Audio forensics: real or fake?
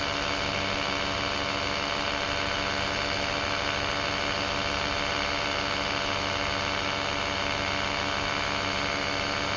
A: real